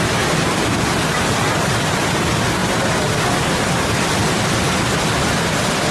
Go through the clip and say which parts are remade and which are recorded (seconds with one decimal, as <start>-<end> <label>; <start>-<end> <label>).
0.0-5.9 recorded